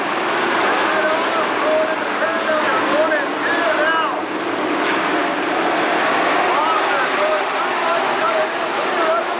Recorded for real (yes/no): yes